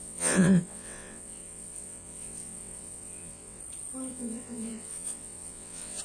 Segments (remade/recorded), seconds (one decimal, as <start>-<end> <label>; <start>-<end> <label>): 0.0-3.6 remade; 3.6-4.1 recorded; 4.1-6.0 remade